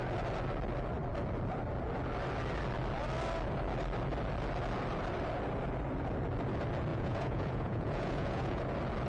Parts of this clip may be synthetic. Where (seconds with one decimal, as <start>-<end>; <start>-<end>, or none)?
6.9-8.6